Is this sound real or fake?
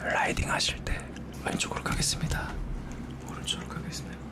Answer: real